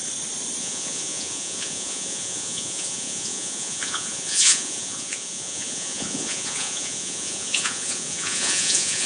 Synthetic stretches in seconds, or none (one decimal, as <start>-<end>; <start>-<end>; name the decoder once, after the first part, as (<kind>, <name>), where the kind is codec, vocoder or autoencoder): 0.6-9.1 (vocoder, Vocos)